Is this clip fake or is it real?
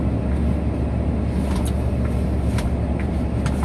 real